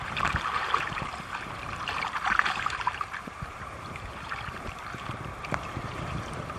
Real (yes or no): no